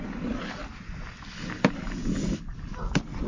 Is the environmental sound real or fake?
real